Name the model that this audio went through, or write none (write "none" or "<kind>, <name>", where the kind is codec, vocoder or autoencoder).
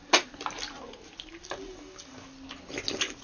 none